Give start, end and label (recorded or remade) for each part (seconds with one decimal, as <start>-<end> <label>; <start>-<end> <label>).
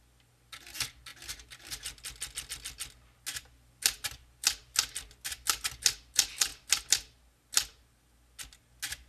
0.0-9.1 recorded